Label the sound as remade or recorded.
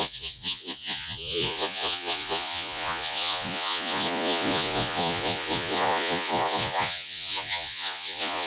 remade